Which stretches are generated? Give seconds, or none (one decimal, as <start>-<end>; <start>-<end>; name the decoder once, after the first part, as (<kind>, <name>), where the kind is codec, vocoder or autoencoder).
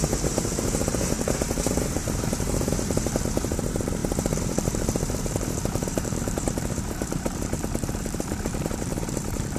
0.0-9.6 (vocoder, BigVGAN v2)